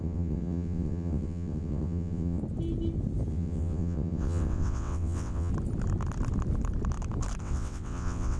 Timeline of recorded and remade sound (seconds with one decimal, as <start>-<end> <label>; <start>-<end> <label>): 0.0-2.4 remade; 2.4-3.3 recorded; 3.3-5.5 remade; 5.5-7.4 recorded; 7.4-8.4 remade